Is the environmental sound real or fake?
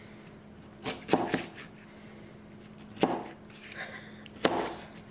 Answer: real